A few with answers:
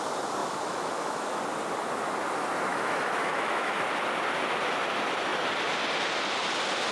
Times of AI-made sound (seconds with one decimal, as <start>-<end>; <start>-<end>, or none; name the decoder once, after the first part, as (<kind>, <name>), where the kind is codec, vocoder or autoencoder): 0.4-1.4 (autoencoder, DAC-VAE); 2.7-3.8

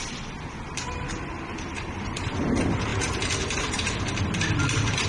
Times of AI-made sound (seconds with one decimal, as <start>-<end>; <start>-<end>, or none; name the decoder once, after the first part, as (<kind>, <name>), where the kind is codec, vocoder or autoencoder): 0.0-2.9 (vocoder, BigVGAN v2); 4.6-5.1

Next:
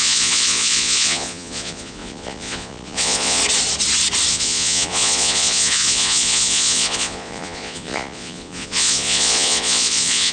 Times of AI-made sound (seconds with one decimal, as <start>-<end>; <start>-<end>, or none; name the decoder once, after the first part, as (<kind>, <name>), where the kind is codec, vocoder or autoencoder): 0.0-3.4 (vocoder, Vocos); 4.3-10.3

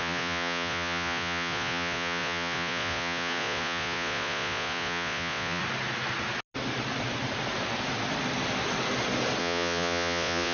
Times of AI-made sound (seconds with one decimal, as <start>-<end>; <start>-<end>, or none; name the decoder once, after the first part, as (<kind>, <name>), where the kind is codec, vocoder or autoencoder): 0.0-5.6 (vocoder, Vocos); 9.4-10.5

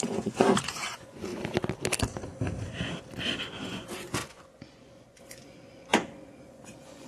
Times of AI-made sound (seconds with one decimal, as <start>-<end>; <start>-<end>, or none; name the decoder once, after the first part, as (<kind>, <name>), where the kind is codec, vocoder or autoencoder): 0.0-1.3 (vocoder, Vocos); 3.4-7.1